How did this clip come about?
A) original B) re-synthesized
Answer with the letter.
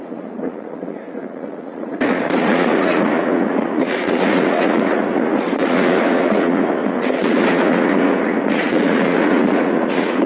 B